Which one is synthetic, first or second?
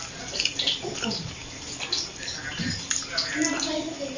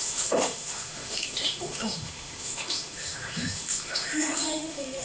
second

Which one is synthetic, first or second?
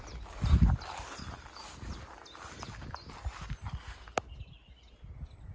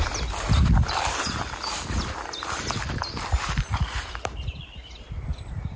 second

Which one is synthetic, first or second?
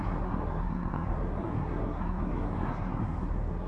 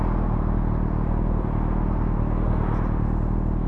first